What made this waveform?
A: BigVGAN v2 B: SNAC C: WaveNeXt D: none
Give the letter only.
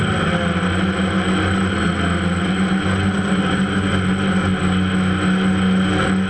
D